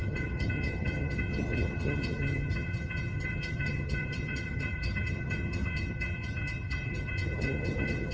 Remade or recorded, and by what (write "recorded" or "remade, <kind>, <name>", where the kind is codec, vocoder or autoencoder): remade, vocoder, HiFi-GAN